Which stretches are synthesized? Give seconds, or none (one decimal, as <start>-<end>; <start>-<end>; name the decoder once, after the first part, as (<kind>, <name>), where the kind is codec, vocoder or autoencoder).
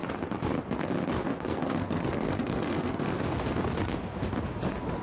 1.2-3.2 (codec, SNAC)